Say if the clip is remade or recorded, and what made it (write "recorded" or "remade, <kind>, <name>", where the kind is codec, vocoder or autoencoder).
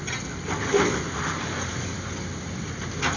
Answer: recorded